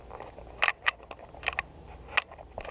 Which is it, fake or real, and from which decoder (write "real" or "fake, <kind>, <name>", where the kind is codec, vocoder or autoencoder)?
real